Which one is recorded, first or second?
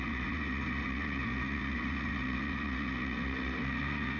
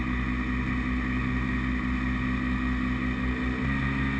second